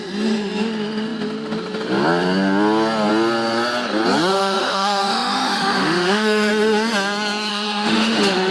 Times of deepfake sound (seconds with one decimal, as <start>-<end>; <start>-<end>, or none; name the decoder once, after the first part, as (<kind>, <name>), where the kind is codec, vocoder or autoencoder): 4.3-6.5 (autoencoder, DAC-VAE); 7.5-8.5